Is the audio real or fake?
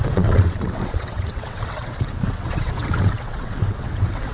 fake